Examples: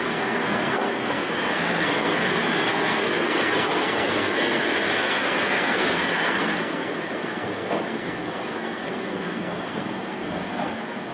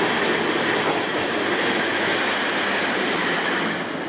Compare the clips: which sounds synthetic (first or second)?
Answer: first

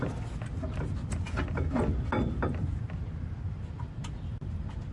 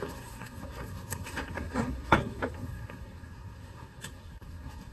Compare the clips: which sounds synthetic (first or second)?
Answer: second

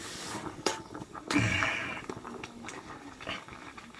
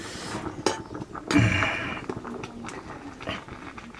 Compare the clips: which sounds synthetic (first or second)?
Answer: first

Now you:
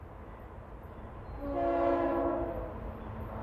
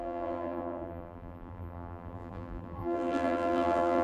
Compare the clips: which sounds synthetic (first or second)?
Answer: second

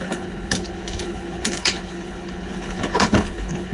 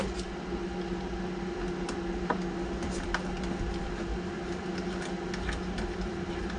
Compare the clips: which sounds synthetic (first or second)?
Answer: first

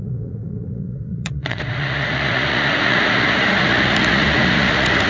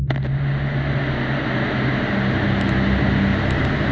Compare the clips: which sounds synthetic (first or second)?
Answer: first